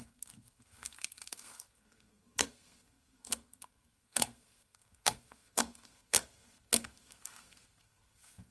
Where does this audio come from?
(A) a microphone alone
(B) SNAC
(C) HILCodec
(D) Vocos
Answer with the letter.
B